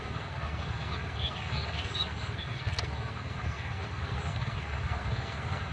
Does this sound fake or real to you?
fake